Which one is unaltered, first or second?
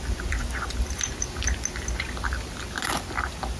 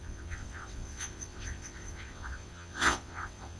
first